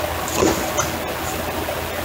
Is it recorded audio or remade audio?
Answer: recorded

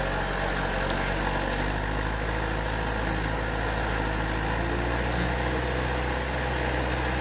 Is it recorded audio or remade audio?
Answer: recorded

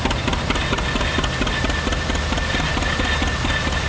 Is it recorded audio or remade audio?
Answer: recorded